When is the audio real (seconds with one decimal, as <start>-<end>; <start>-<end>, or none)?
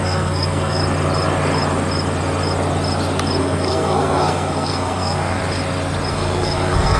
0.8-3.4; 5.4-6.1